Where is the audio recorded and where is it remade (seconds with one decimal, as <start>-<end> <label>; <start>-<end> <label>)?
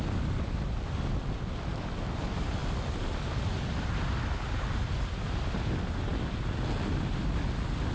0.0-7.9 recorded